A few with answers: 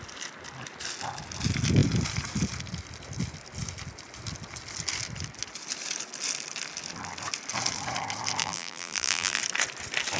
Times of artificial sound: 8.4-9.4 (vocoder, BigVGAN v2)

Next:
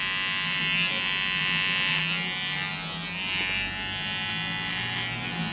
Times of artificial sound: none

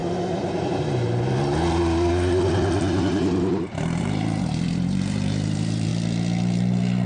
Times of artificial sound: 4.0-5.9 (vocoder, BigVGAN v2)

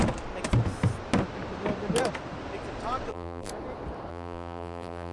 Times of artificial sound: 3.1-3.5 (vocoder, BigVGAN v2); 4.1-5.1